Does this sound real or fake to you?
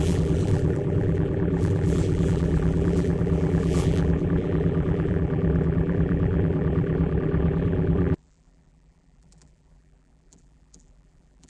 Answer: fake